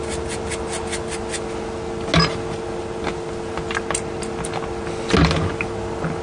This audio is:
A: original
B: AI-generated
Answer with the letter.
A